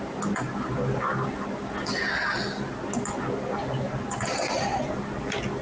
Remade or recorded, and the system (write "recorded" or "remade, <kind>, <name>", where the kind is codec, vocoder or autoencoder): recorded